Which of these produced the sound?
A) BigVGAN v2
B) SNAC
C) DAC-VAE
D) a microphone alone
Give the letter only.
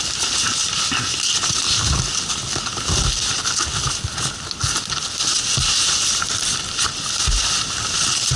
D